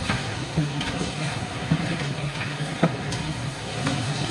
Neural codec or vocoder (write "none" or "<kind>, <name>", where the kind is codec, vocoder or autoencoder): codec, SNAC